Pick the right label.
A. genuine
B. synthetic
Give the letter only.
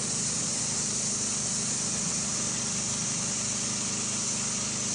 A